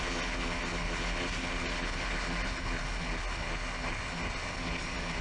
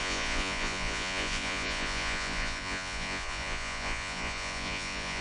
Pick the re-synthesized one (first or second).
second